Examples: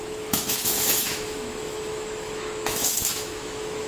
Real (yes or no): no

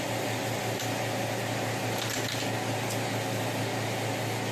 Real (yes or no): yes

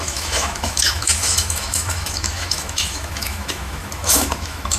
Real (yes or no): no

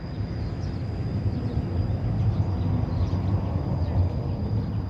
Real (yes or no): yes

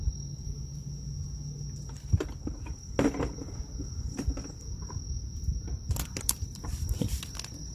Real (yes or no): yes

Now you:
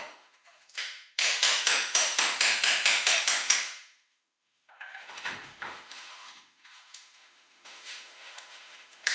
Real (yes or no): no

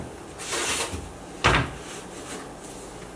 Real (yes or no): yes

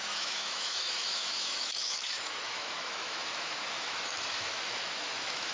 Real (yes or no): no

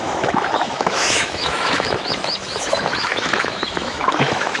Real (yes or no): no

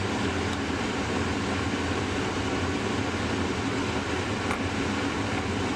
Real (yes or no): yes